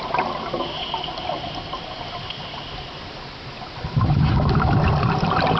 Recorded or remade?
recorded